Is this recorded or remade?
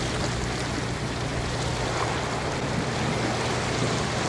recorded